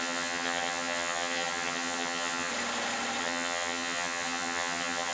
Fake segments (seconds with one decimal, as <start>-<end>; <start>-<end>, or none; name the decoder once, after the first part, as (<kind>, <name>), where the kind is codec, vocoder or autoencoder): 0.0-2.5 (vocoder, HiFi-GAN); 3.2-5.1